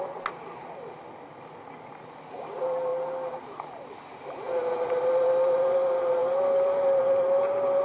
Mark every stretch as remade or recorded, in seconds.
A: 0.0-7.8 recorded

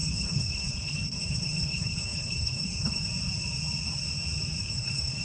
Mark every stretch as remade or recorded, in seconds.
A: 0.0-3.1 remade; 3.1-4.6 recorded; 4.6-5.2 remade

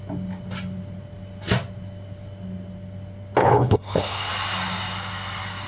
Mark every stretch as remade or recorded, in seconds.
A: 0.0-3.4 recorded; 3.4-4.3 remade; 4.3-5.7 recorded

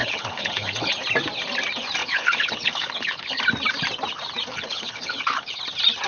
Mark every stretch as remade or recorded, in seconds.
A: 0.0-0.9 remade; 0.9-2.0 recorded; 2.0-3.4 remade; 3.4-4.5 recorded; 4.5-5.6 remade; 5.6-6.1 recorded

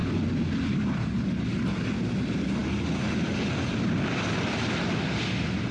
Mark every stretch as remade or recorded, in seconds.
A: 0.0-5.7 recorded

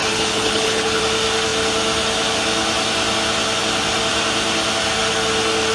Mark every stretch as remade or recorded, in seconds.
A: 0.0-1.0 remade; 1.0-5.7 recorded

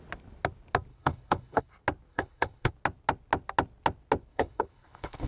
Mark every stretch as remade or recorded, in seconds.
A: 0.0-0.9 recorded; 0.9-1.7 remade; 1.7-2.1 recorded; 2.1-2.7 remade; 2.7-4.3 recorded; 4.3-5.3 remade